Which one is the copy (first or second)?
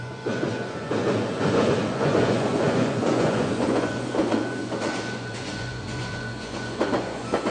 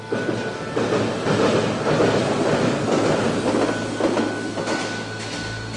first